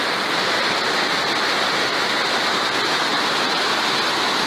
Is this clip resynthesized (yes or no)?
no